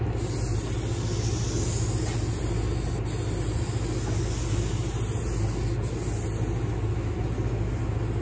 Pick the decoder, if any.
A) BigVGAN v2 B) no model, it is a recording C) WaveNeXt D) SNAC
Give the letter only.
B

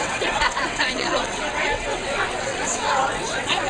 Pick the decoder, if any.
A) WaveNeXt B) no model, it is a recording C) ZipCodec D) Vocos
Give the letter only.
A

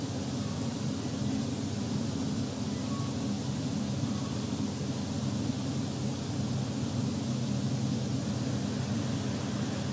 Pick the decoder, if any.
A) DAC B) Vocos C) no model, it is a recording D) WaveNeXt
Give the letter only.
C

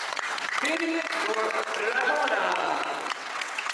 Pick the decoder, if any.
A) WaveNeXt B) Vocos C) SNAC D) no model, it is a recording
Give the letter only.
A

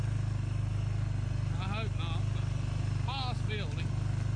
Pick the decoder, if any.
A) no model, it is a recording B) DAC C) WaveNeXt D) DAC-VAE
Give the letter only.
A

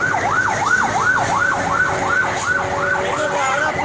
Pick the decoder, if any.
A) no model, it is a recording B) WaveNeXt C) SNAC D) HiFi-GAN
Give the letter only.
A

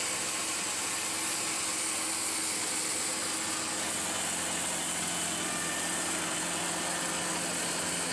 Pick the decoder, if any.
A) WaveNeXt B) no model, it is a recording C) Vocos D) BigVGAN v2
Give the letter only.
B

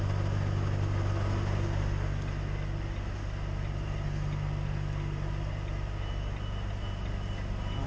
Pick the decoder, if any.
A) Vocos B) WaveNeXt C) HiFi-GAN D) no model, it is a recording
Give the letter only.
D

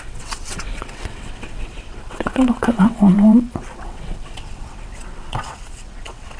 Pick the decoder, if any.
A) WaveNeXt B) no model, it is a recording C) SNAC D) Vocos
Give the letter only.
A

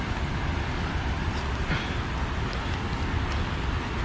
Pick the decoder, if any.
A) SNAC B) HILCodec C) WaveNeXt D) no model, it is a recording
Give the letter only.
D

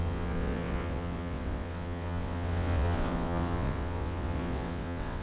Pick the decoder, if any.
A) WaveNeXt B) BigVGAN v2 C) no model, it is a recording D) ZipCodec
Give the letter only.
A